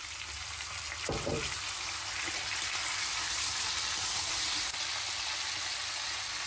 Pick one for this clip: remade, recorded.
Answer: recorded